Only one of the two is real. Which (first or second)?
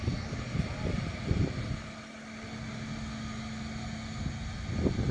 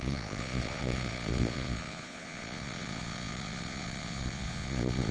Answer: first